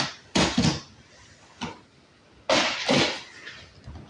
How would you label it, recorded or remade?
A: recorded